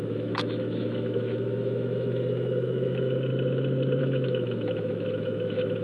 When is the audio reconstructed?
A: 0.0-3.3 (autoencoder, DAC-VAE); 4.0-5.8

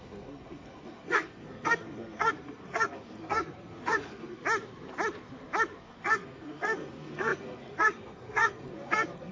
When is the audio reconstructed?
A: 0.0-4.4 (codec, SNAC); 5.8-9.3

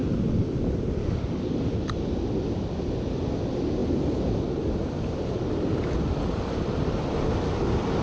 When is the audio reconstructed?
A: none

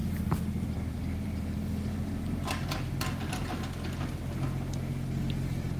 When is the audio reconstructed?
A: 0.0-3.5 (vocoder, BigVGAN v2)

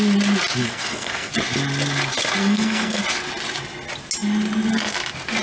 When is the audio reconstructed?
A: 0.6-1.3 (codec, SNAC); 2.4-3.0

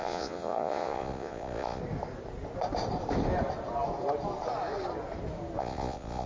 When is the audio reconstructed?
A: 0.0-1.8 (vocoder, Vocos); 5.6-6.3